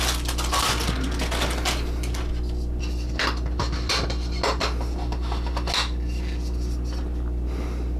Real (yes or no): yes